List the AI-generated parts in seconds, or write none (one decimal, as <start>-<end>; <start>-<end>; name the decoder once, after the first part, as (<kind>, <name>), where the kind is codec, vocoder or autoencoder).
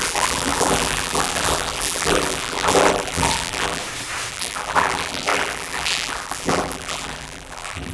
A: 0.0-3.8 (vocoder, BigVGAN v2); 4.3-7.9